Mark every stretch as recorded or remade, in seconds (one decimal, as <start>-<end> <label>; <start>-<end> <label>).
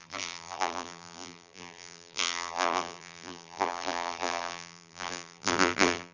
0.0-6.1 remade